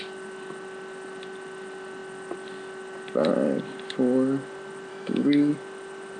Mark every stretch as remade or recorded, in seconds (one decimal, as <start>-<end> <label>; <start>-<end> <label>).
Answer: 0.0-4.9 recorded; 4.9-5.5 remade; 5.5-6.2 recorded

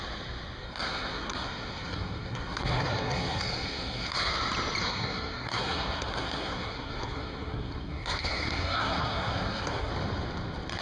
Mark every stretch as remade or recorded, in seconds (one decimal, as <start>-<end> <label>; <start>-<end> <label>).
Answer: 0.0-0.6 recorded; 0.6-4.3 remade; 4.3-4.8 recorded; 4.8-9.9 remade; 9.9-10.8 recorded

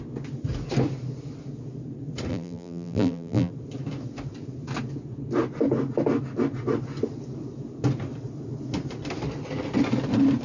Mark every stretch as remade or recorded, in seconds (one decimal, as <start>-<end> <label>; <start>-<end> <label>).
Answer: 0.0-2.3 recorded; 2.3-3.5 remade; 3.5-10.4 recorded

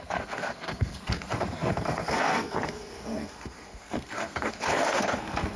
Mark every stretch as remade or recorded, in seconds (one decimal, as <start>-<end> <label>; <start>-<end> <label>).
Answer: 0.0-5.6 remade

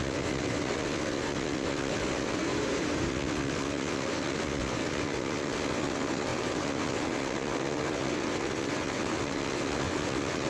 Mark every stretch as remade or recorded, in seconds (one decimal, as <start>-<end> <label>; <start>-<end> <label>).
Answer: 0.0-2.4 remade; 2.4-3.1 recorded; 3.1-10.5 remade

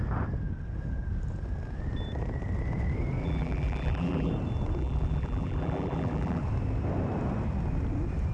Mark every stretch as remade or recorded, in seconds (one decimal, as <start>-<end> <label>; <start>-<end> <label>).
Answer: 0.0-3.2 recorded; 3.2-4.3 remade; 4.3-4.8 recorded; 4.8-6.4 remade; 6.4-8.3 recorded

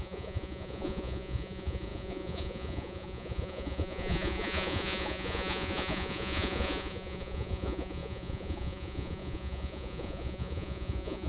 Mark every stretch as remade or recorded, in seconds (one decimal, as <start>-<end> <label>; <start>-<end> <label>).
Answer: 0.0-11.3 remade